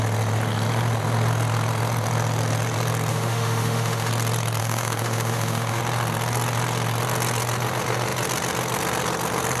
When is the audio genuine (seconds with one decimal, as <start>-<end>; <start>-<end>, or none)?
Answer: 0.0-3.1; 4.1-4.6; 5.8-9.6